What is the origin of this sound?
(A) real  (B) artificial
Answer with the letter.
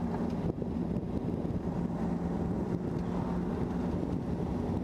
A